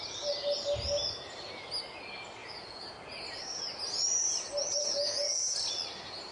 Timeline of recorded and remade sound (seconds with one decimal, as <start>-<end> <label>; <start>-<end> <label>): 0.0-2.4 recorded; 2.4-2.9 remade; 2.9-4.6 recorded; 4.6-5.4 remade; 5.4-6.3 recorded